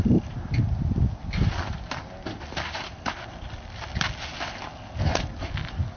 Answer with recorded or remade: recorded